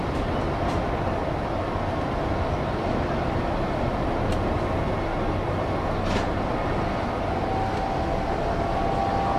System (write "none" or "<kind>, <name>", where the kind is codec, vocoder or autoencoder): none